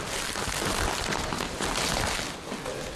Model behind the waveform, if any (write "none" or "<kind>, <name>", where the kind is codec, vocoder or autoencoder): none